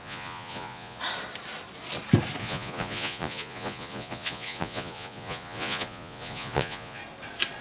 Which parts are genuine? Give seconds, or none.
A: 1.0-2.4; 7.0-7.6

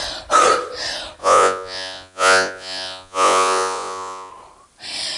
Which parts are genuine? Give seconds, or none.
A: 0.0-1.2; 4.3-5.2

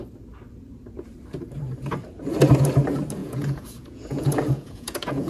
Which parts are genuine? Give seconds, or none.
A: 0.0-3.2